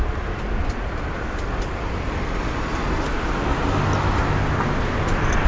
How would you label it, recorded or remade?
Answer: recorded